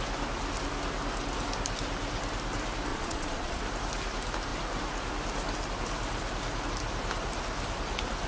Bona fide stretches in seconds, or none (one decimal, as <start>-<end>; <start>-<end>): 0.0-2.9; 3.6-8.3